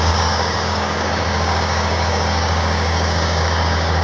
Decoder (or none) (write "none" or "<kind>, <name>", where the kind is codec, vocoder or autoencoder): codec, DAC